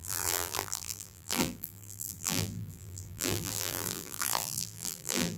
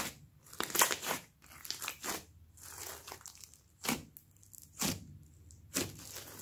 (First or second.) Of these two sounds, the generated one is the first